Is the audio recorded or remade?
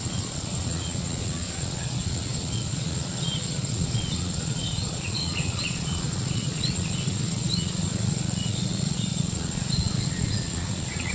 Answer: remade